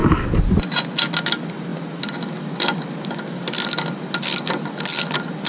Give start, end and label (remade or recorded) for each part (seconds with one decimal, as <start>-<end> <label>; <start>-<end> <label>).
0.0-5.5 recorded